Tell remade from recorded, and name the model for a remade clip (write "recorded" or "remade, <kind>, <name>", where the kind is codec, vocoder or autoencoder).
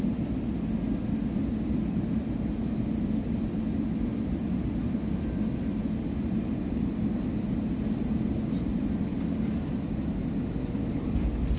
recorded